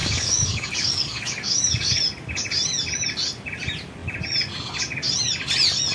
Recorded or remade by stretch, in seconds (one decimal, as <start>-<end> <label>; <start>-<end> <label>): 0.0-2.0 remade; 2.0-5.9 recorded